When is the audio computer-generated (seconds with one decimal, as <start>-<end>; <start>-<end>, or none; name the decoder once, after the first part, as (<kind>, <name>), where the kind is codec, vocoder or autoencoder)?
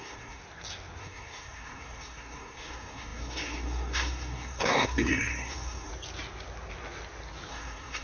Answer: 0.0-0.4 (codec, SNAC); 1.0-5.9; 7.5-8.0